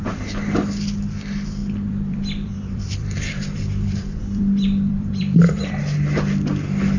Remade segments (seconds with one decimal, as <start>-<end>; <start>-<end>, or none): 1.6-5.8